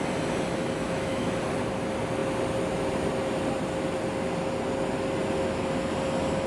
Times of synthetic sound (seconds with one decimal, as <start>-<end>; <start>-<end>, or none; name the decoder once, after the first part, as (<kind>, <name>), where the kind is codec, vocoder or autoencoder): 0.6-1.4 (autoencoder, DAC-VAE)